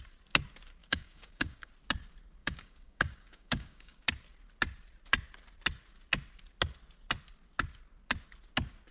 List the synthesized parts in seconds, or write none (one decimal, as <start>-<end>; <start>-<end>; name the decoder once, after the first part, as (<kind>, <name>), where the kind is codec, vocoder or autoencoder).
0.8-1.7 (codec, DAC); 2.4-4.0